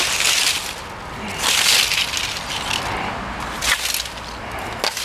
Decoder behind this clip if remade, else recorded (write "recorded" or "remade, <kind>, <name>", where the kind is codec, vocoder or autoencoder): recorded